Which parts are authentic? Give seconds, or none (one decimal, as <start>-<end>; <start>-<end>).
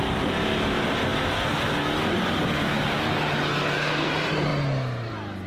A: 0.0-3.5; 4.1-5.5